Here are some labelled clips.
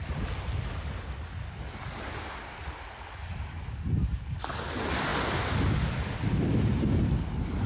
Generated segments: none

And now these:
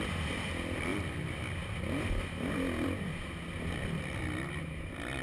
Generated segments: 0.9-1.4 (vocoder, BigVGAN v2)

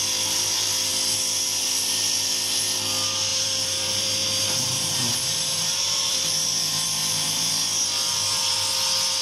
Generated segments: 3.3-7.5 (vocoder, BigVGAN v2)

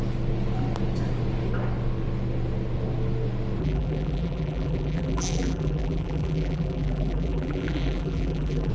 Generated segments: 3.6-8.7 (vocoder, BigVGAN v2)

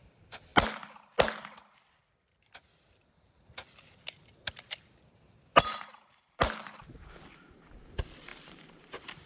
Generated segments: 0.0-0.5 (vocoder, BigVGAN v2); 5.6-6.4; 7.3-9.3

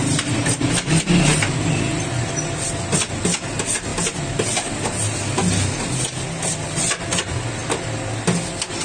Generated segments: none